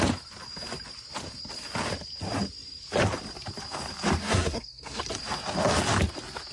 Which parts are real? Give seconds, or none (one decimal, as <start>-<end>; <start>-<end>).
0.0-4.2; 5.0-6.5